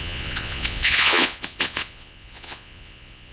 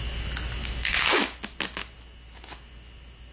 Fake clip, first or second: first